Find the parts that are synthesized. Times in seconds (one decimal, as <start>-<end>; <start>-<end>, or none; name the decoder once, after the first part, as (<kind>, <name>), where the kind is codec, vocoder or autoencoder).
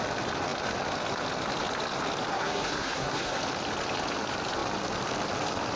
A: 2.3-3.4 (codec, SNAC)